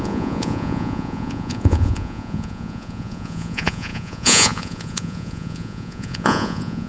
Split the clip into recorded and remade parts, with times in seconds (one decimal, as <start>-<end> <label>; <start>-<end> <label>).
0.0-6.9 remade